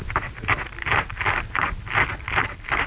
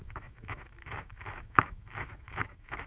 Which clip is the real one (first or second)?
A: first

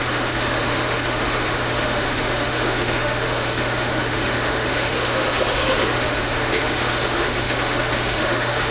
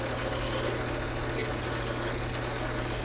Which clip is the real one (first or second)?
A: second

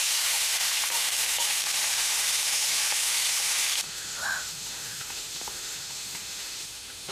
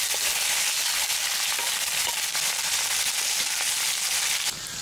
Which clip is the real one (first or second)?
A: second